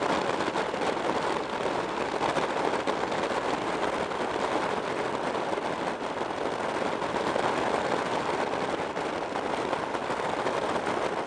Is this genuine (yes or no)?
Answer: yes